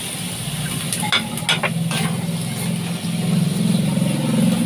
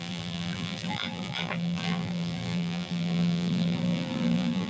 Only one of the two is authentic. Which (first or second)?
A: first